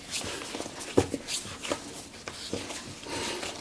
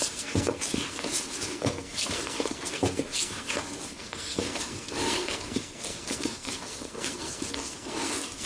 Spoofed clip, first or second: second